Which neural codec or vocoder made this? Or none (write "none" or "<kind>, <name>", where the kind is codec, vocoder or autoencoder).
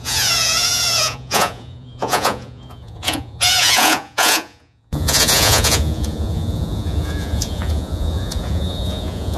vocoder, Vocos